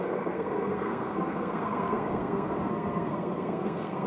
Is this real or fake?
fake